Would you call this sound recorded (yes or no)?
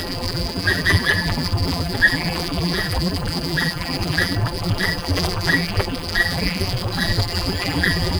no